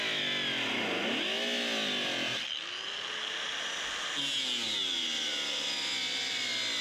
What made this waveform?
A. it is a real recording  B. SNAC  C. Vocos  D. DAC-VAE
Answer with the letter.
A